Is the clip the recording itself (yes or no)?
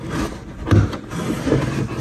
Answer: yes